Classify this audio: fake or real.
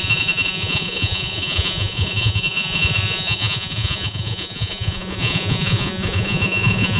fake